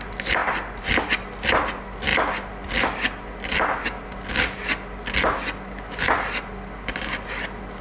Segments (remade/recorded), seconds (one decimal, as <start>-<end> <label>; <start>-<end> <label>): 0.0-7.8 recorded